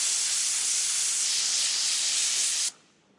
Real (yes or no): yes